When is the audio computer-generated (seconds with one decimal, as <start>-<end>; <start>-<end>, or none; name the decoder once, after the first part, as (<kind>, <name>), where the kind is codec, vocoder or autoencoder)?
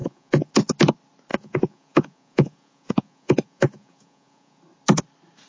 0.0-0.5 (vocoder, Vocos); 1.3-4.6